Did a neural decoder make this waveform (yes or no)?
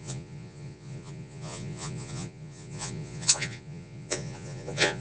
yes